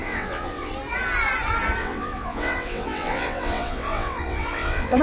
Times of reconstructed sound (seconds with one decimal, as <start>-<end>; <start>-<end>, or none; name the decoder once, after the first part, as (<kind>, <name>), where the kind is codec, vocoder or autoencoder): 0.0-0.7 (vocoder, WaveNeXt); 1.8-5.0